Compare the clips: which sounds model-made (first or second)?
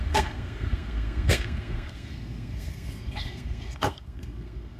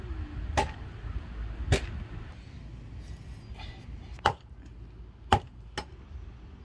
first